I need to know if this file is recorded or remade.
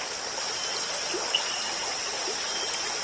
recorded